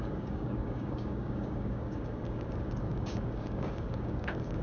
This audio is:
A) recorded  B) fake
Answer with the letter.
B